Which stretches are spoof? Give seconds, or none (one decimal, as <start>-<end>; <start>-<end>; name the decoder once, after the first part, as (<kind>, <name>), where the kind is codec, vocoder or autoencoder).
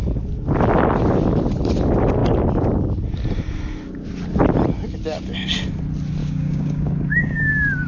6.2-7.5 (codec, DAC)